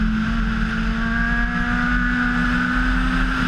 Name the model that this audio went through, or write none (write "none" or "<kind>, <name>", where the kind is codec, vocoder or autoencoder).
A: none